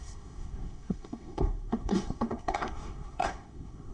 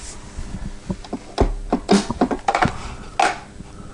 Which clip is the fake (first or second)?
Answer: first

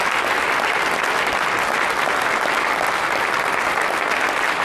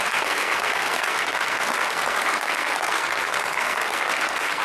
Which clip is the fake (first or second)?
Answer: second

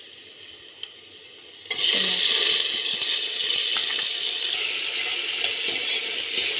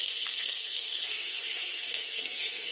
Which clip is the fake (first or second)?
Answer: second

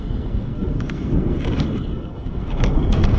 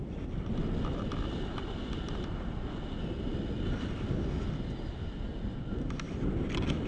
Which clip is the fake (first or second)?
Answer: first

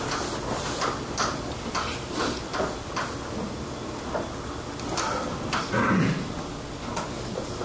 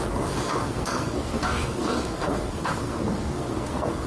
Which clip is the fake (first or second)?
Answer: second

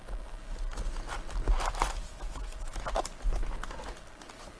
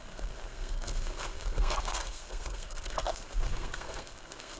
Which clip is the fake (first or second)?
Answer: second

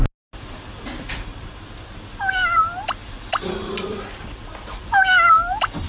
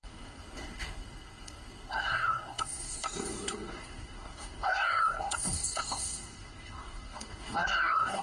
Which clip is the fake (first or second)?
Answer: second